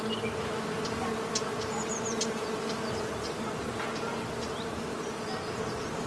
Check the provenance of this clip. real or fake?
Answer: real